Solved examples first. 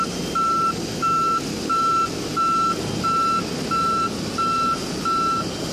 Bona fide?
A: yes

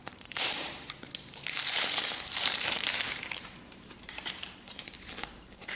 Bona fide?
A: no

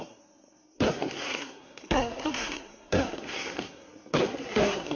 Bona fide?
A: no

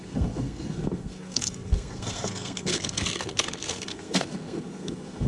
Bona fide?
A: no